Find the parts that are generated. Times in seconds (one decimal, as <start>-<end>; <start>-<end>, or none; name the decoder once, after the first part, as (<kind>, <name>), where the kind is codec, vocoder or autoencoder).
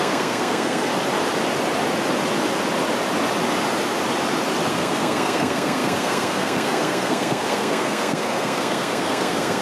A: 0.0-0.9 (codec, SNAC); 4.7-9.6